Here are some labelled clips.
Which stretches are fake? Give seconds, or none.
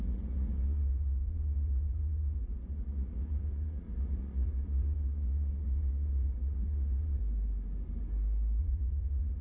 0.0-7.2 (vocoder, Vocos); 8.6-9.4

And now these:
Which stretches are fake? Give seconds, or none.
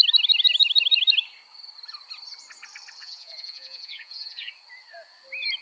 3.0-4.5 (vocoder, Vocos)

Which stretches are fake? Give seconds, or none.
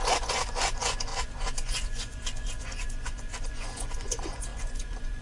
0.0-5.2 (vocoder, Vocos)